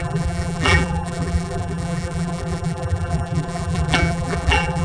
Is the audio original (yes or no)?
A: no